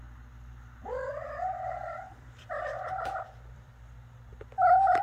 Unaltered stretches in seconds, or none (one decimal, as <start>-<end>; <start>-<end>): 0.0-0.8; 3.7-5.0